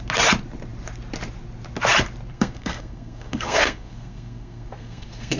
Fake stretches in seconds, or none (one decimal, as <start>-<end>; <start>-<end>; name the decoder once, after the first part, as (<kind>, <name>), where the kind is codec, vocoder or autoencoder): 2.3-5.4 (codec, SNAC)